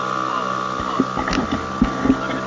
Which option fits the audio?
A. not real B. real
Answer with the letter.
B